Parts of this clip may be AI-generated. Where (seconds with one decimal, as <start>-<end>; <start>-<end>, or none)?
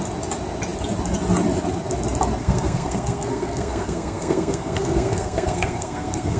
2.4-6.4